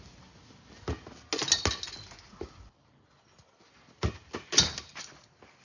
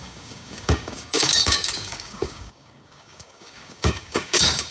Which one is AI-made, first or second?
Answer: second